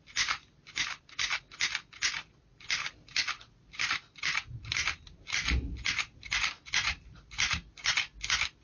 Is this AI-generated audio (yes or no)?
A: no